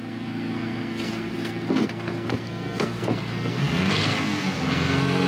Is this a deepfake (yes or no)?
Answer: yes